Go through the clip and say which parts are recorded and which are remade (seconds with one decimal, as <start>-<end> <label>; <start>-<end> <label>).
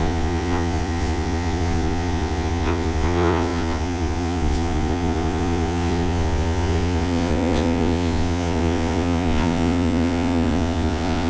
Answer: 0.0-11.3 remade